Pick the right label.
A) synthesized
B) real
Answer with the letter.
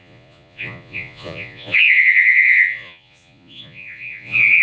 A